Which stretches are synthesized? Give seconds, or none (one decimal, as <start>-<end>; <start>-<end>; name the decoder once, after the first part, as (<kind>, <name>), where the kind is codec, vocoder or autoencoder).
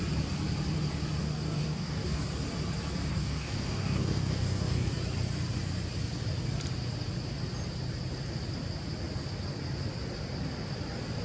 1.2-2.2 (codec, DAC); 3.1-4.9